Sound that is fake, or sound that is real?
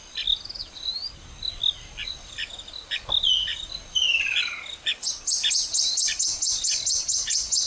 real